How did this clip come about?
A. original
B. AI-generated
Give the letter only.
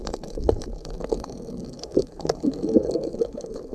B